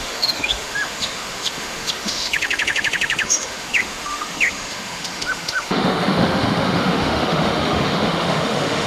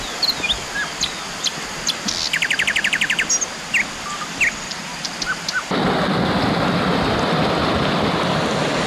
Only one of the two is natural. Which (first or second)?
second